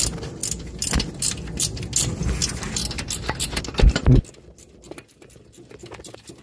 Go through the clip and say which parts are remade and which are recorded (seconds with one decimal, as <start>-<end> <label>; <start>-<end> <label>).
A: 0.0-6.4 recorded